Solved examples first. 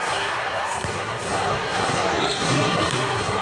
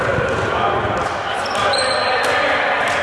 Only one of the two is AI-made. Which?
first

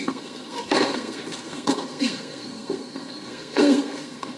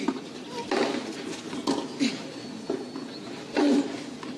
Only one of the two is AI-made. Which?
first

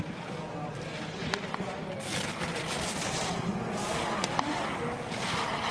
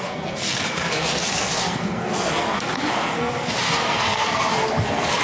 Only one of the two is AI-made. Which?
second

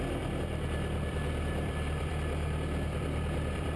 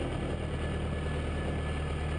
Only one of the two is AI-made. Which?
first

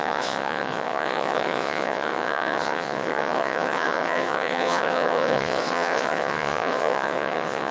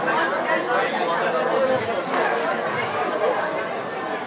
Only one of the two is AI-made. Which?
first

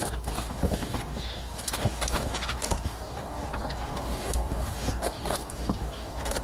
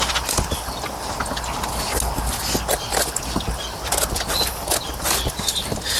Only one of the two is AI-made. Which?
first